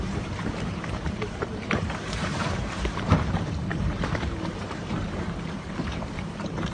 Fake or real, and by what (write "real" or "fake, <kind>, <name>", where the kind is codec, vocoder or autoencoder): fake, vocoder, BigVGAN v2